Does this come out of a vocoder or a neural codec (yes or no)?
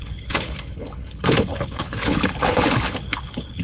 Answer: yes